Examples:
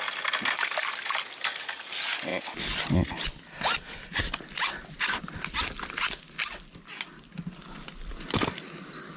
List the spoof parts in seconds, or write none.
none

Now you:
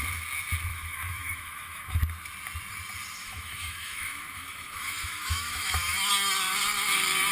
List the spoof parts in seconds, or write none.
0.7-2.0 (autoencoder, DAC-VAE); 3.2-6.1